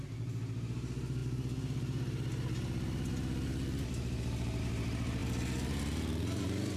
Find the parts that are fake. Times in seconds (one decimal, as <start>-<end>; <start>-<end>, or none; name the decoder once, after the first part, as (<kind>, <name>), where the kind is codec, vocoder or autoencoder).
none